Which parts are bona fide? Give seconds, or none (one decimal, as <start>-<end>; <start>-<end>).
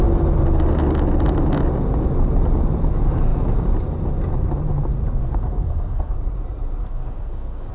0.0-5.2; 6.1-6.8